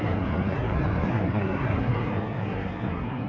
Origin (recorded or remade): remade